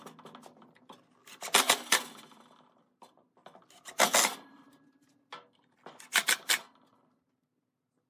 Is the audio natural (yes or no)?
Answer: yes